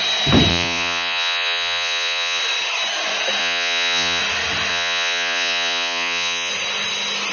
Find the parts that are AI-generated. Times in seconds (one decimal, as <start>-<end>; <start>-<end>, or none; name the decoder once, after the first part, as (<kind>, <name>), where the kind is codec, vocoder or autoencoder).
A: 0.5-2.4 (vocoder, Vocos); 3.4-4.2; 4.7-6.5